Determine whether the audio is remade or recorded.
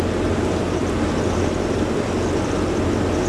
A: recorded